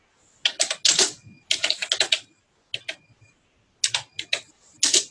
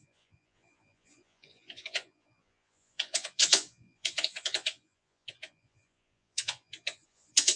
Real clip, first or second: first